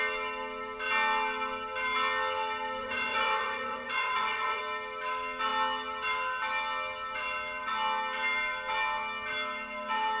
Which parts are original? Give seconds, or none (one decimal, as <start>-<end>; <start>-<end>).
0.0-2.8; 4.6-10.2